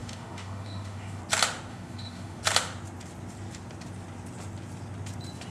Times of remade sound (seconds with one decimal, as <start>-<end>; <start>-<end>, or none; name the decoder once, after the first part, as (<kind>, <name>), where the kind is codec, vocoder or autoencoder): 0.0-1.2 (autoencoder, DAC-VAE); 1.7-2.4